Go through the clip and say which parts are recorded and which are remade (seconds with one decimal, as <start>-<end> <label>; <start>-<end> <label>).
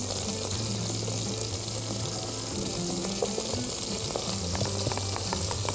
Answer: 0.0-5.7 recorded